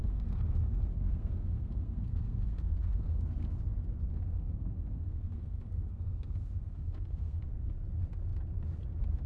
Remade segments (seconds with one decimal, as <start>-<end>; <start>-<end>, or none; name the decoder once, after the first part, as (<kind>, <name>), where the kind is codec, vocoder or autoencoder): 0.0-3.6 (codec, SNAC); 4.1-7.7